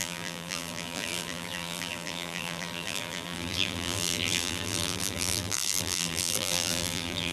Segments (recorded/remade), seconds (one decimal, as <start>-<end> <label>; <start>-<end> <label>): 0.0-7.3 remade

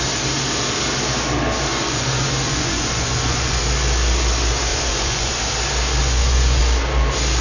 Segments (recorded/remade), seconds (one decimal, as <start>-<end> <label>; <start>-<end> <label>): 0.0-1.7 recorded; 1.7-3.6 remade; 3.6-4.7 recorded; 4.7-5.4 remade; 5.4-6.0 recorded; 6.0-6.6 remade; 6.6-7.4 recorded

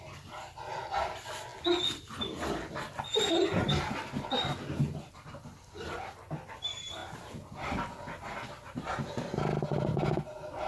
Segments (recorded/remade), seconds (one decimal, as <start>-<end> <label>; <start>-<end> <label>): 0.0-10.7 recorded

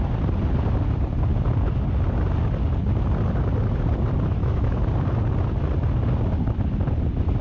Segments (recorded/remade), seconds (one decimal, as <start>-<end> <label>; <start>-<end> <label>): 0.0-4.3 recorded; 4.3-4.8 remade; 4.8-7.4 recorded

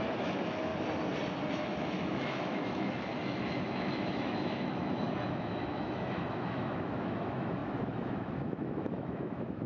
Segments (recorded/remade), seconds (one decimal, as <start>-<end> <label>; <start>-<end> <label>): 0.0-0.7 remade; 0.7-1.5 recorded; 1.5-9.7 remade

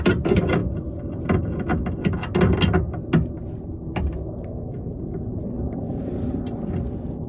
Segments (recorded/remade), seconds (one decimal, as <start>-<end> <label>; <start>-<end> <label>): 0.0-0.6 remade; 0.6-1.1 recorded; 1.1-1.7 remade; 1.7-5.8 recorded; 5.8-7.3 remade

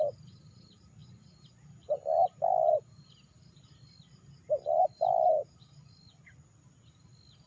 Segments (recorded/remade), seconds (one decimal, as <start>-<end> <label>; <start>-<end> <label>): 0.0-7.5 recorded

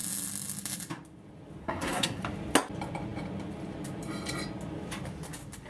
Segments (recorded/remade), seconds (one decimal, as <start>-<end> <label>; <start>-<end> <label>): 0.0-1.6 recorded; 1.6-2.2 remade; 2.2-5.7 recorded